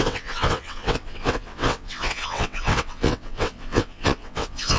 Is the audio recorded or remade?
remade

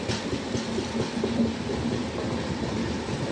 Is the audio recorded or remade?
recorded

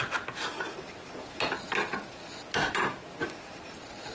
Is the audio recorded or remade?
recorded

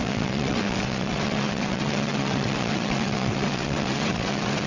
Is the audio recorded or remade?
remade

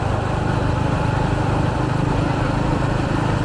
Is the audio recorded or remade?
recorded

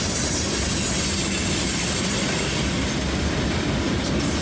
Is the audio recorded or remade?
recorded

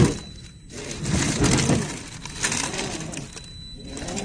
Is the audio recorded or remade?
recorded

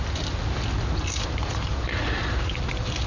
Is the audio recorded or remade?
recorded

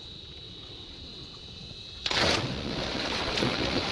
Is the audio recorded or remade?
remade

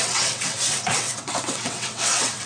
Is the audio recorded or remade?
remade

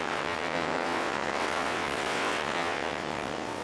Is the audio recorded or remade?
remade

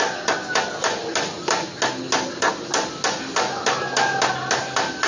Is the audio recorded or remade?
recorded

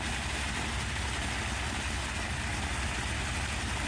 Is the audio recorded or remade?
recorded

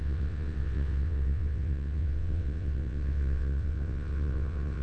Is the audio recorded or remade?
remade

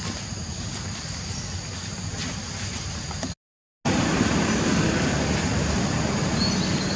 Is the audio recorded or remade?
recorded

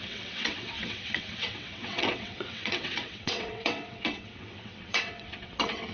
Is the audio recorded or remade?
remade